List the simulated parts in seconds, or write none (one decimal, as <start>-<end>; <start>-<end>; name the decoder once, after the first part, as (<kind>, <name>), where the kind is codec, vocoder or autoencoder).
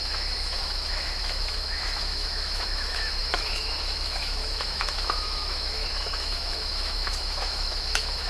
0.0-8.3 (autoencoder, DAC-VAE)